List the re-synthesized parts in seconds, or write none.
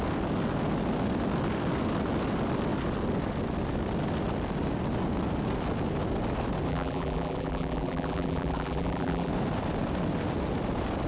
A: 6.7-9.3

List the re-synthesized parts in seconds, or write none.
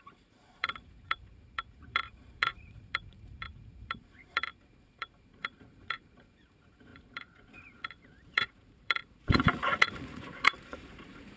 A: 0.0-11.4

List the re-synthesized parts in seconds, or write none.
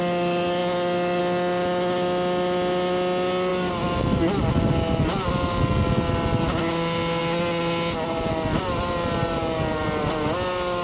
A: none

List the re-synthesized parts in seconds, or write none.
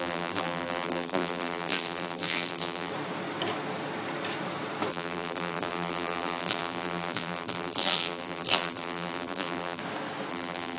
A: 0.0-2.9; 4.9-9.8; 10.3-10.8